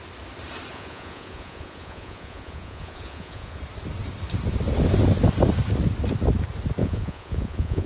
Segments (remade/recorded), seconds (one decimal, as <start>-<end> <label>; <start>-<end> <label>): 0.0-0.7 recorded; 0.7-3.6 remade; 3.6-6.8 recorded; 6.8-7.9 remade